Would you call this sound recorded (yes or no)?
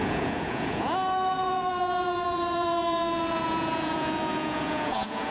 no